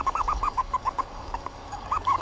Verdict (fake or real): fake